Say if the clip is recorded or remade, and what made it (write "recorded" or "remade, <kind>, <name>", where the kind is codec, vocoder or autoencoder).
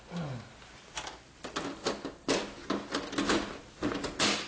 recorded